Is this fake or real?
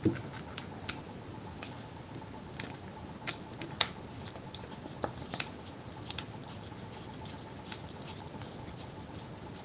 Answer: real